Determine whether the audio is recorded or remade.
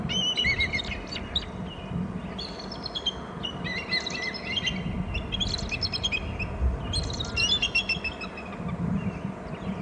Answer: recorded